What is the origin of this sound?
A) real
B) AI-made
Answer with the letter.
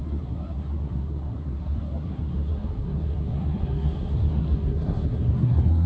B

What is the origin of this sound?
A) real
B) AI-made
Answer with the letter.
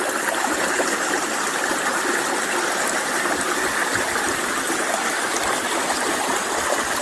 A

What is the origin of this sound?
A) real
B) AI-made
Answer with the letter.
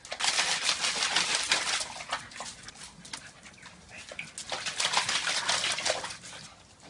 A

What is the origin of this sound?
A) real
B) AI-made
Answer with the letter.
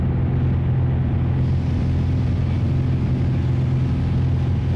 A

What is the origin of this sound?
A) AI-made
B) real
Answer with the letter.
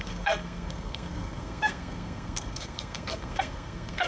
A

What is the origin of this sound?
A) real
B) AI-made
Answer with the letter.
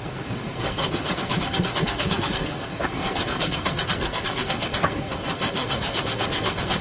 B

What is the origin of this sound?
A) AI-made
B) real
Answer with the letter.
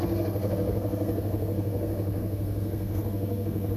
A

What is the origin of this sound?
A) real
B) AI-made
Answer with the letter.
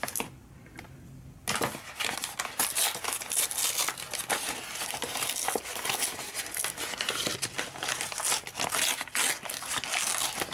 A